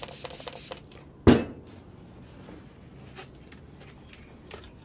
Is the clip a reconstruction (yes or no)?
no